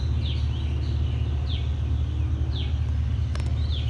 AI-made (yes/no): no